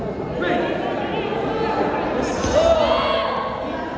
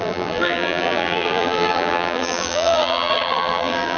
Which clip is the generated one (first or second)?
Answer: second